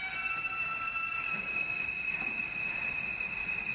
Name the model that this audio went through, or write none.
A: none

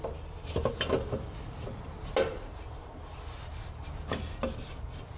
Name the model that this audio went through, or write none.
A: none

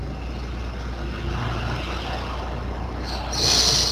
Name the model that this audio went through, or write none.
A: none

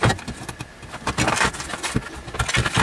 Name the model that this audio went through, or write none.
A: none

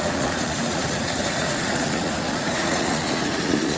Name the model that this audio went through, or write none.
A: vocoder, Vocos